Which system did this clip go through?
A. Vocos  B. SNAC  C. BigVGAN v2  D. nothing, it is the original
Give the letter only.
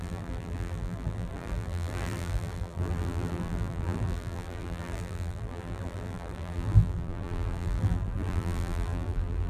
C